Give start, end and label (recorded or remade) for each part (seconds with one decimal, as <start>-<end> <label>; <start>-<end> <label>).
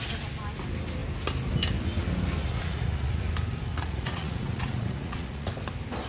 0.0-2.4 recorded; 2.4-3.3 remade; 3.3-3.7 recorded; 3.7-5.5 remade; 5.5-6.1 recorded